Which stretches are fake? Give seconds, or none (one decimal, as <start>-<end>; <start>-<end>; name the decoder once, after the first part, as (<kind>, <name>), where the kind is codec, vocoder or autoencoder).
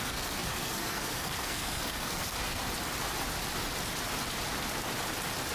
0.0-2.6 (codec, SNAC)